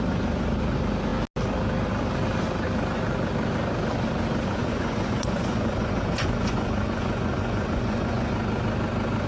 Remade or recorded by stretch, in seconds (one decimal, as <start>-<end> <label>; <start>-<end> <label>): 0.0-4.6 recorded; 4.6-8.3 remade; 8.3-9.3 recorded